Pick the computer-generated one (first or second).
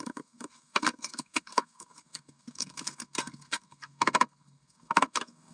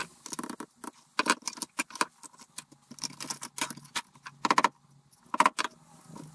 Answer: first